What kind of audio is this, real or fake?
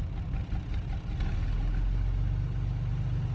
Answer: real